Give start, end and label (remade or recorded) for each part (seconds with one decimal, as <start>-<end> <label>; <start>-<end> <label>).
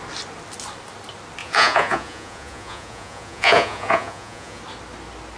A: 0.0-1.4 recorded; 1.4-4.6 remade; 4.6-5.4 recorded